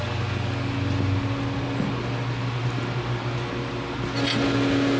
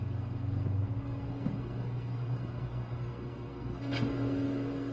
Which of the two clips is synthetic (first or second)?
second